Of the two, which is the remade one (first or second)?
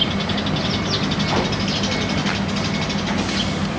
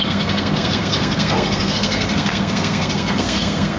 second